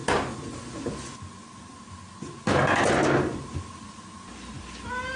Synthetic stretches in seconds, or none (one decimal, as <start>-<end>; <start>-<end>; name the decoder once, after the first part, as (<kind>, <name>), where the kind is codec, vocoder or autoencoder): none